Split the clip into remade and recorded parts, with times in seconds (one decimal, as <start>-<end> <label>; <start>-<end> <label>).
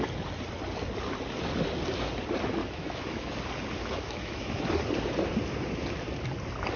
0.0-2.6 recorded; 2.6-3.3 remade; 3.3-3.8 recorded; 3.8-4.6 remade; 4.6-6.8 recorded